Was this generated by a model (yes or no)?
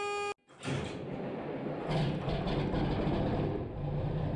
no